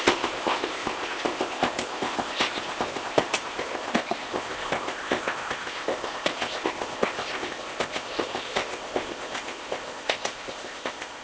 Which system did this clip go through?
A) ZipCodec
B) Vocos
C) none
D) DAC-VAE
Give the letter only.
A